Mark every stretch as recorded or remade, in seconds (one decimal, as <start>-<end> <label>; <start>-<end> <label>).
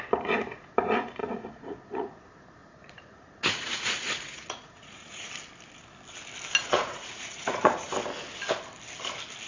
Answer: 0.0-1.2 recorded; 1.2-2.2 remade; 2.2-2.6 recorded; 2.6-5.3 remade; 5.3-6.6 recorded; 6.6-7.9 remade; 7.9-9.5 recorded